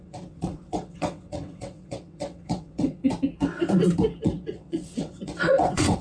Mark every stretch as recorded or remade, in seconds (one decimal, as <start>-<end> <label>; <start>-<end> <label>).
0.0-3.0 remade; 3.0-4.2 recorded; 4.2-6.0 remade